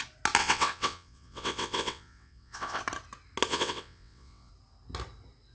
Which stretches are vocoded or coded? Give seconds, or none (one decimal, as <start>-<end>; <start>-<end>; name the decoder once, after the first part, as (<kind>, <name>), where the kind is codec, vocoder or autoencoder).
0.4-2.8 (vocoder, WaveNeXt); 3.5-4.5